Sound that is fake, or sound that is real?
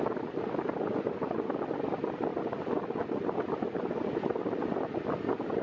real